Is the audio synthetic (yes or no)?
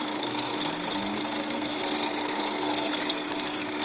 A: yes